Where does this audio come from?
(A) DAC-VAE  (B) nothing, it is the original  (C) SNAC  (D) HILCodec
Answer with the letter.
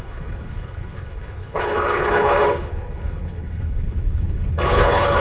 D